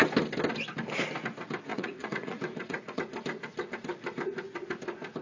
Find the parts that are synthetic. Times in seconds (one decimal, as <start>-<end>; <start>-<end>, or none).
1.7-3.0